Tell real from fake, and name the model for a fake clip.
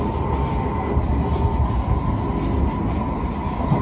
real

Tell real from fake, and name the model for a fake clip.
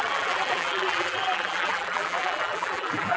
fake, vocoder, BigVGAN v2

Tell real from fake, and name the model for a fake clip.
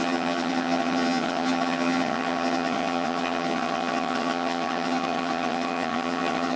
fake, vocoder, HiFi-GAN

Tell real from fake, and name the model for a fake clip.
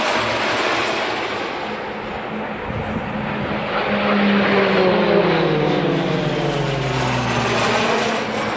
real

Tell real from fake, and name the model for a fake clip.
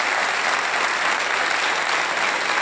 real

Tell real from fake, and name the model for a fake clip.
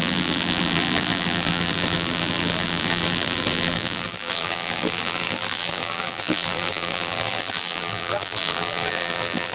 fake, vocoder, BigVGAN v2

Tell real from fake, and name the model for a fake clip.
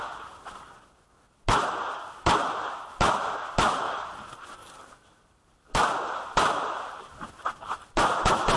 real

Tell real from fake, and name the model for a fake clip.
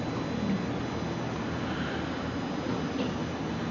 real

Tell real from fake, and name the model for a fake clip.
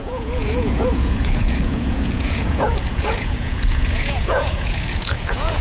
fake, vocoder, Vocos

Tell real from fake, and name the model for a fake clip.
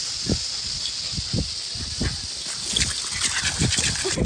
real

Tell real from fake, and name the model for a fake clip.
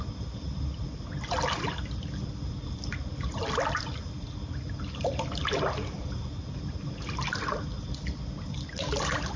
real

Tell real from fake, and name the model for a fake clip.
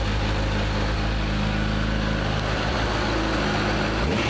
real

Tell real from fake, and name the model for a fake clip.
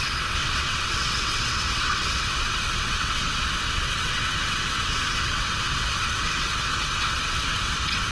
fake, vocoder, WaveNeXt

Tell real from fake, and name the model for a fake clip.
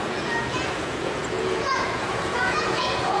fake, vocoder, Vocos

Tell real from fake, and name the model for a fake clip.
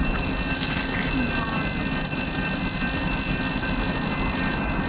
real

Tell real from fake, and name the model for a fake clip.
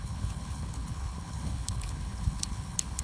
fake, codec, HILCodec